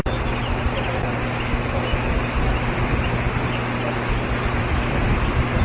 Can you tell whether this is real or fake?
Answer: real